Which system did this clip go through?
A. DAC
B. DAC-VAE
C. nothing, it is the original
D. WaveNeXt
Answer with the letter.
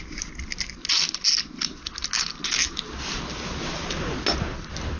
C